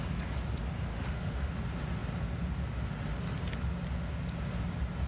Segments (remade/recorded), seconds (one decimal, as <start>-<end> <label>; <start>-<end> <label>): 0.0-0.9 recorded; 0.9-1.5 remade; 1.5-5.1 recorded